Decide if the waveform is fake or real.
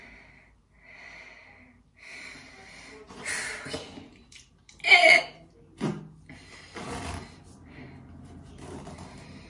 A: real